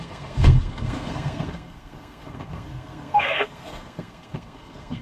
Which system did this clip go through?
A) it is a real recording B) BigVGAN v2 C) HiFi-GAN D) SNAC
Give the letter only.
D